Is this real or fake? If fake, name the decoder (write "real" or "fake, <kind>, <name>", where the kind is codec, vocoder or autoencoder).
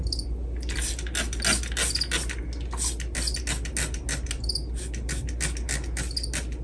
real